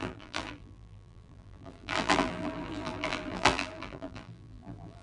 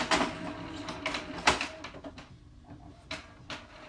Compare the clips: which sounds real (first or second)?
second